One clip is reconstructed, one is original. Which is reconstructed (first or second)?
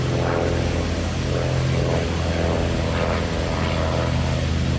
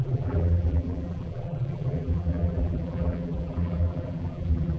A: second